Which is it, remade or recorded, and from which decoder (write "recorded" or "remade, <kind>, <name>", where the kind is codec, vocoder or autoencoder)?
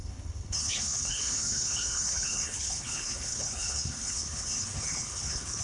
remade, codec, HILCodec